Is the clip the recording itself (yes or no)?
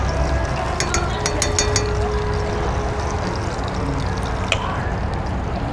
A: yes